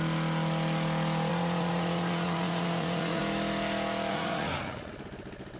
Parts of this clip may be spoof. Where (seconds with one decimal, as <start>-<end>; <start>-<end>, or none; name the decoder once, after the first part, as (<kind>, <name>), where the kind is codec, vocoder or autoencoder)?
1.3-3.2 (vocoder, Vocos); 4.1-4.9